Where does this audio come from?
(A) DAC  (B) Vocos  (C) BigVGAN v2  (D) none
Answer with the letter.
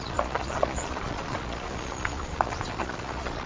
B